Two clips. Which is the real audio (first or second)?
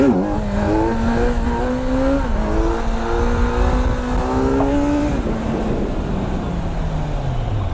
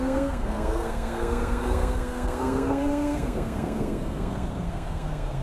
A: first